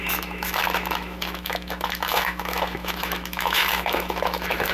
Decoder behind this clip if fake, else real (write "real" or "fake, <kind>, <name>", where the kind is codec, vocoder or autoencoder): fake, autoencoder, DAC-VAE